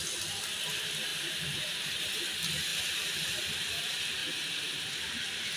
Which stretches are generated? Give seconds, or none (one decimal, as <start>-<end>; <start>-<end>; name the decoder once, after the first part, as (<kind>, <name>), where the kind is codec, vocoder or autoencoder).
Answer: 1.1-2.1 (vocoder, BigVGAN v2); 2.7-3.4; 4.2-4.9